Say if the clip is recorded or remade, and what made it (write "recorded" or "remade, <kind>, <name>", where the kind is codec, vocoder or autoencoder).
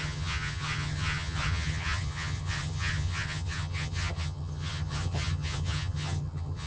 remade, vocoder, HiFi-GAN